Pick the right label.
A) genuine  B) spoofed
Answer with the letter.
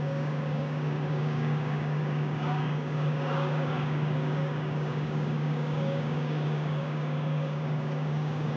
B